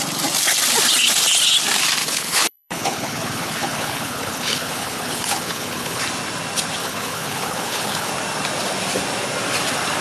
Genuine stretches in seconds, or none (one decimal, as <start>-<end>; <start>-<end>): 0.0-2.0; 6.0-6.8; 8.1-10.0